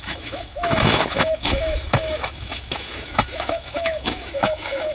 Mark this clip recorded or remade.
remade